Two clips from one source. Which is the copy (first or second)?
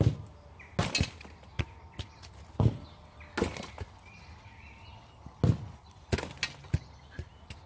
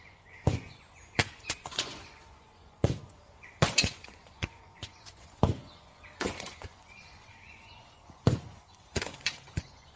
second